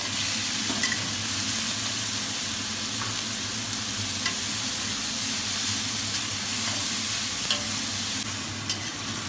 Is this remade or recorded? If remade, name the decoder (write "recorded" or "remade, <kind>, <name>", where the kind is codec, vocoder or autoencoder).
recorded